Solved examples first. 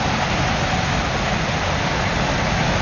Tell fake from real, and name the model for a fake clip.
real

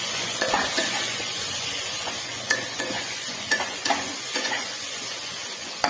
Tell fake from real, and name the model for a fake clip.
fake, vocoder, Vocos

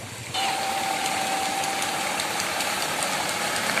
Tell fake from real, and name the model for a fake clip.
real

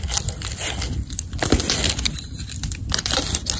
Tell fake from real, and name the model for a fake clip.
real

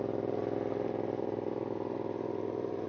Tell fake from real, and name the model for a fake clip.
real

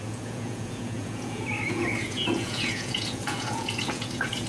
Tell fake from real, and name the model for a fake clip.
fake, vocoder, Vocos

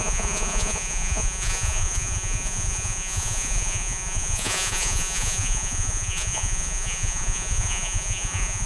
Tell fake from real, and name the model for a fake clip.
fake, vocoder, Vocos